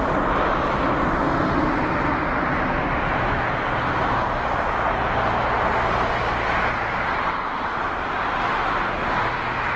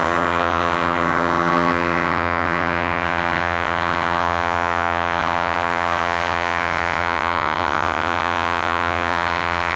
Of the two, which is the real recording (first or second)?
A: first